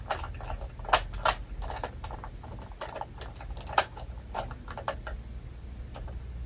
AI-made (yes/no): no